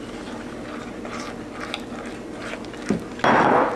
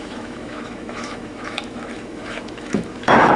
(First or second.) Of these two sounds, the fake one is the second